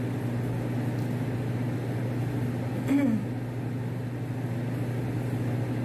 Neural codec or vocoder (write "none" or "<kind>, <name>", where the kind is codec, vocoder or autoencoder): none